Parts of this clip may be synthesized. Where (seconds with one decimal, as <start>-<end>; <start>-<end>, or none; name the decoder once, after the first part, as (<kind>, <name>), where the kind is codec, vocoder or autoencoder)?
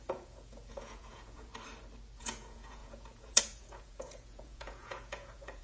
0.0-1.5 (vocoder, Vocos); 2.2-5.6